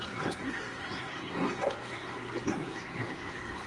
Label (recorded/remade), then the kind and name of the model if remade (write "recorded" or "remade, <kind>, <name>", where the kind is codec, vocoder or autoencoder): remade, codec, SNAC